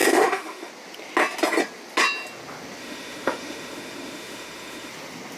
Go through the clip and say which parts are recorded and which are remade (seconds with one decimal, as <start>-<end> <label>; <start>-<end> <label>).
0.0-0.7 remade; 0.7-2.8 recorded; 2.8-4.9 remade; 4.9-5.4 recorded